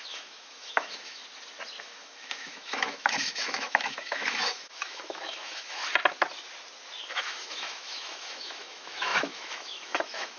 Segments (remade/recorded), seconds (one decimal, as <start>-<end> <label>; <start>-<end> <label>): 0.0-1.2 remade; 1.2-1.8 recorded; 1.8-5.8 remade; 5.8-7.1 recorded; 7.1-10.4 remade